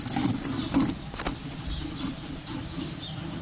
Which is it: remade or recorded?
recorded